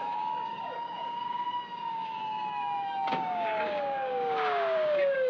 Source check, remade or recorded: remade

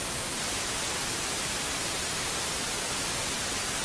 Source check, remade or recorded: recorded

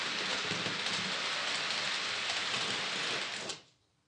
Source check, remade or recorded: recorded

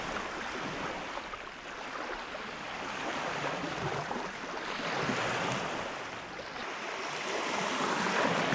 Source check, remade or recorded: recorded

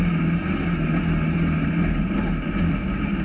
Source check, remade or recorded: recorded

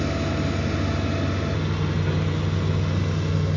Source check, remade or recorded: recorded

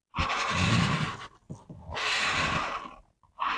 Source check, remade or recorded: recorded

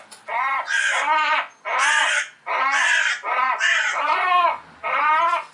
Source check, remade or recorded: recorded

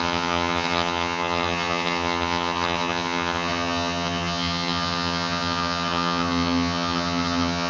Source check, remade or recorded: remade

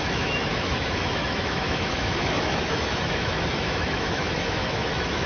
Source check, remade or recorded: remade